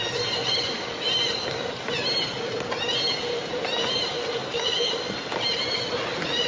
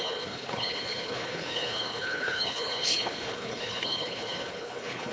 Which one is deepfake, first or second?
second